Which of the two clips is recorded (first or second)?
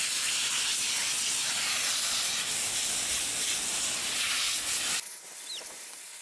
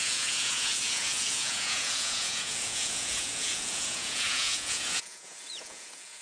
first